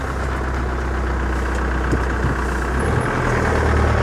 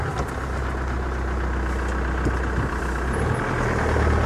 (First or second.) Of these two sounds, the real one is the first